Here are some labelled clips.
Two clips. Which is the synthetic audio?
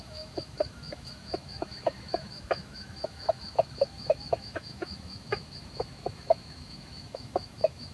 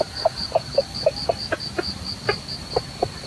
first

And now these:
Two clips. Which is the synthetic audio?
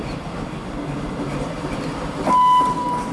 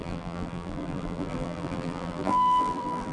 second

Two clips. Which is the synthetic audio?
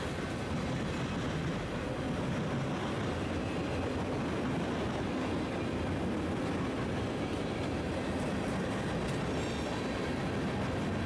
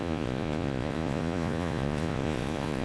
second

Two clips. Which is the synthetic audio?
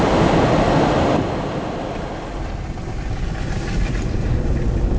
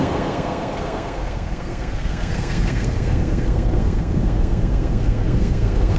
second